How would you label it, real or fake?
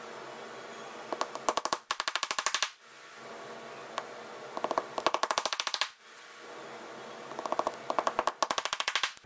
real